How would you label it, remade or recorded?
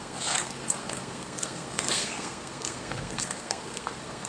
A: remade